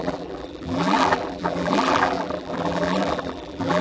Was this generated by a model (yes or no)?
yes